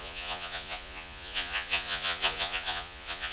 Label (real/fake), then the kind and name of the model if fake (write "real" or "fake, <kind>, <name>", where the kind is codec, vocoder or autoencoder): fake, vocoder, Vocos